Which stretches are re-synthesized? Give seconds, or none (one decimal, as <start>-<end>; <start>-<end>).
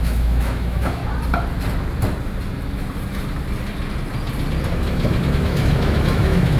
0.0-1.0; 4.7-6.6